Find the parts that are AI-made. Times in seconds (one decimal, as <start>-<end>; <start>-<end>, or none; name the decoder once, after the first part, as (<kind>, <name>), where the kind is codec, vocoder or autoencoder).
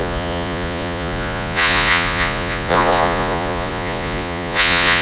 0.0-5.0 (vocoder, Vocos)